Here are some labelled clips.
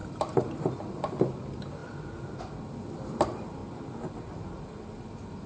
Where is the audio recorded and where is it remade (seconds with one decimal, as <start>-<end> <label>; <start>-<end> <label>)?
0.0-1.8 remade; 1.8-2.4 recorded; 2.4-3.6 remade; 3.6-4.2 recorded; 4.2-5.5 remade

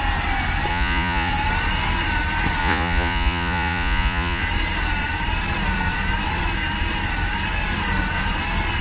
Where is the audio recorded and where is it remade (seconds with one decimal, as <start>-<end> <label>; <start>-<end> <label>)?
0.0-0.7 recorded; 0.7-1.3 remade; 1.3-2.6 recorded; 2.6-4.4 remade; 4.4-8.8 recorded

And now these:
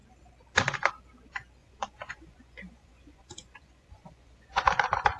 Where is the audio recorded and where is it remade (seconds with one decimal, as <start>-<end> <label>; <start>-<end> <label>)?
0.0-1.6 recorded; 1.6-4.7 remade; 4.7-5.2 recorded